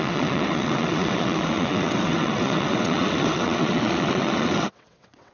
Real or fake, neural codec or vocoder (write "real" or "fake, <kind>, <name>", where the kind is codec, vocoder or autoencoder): fake, vocoder, WaveNeXt